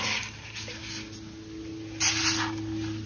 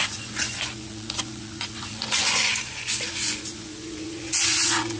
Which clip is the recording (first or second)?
first